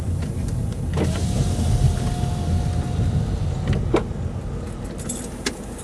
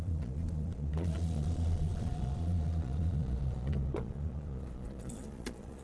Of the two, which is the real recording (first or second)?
first